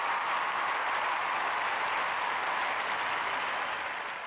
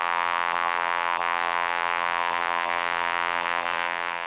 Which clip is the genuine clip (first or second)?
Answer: first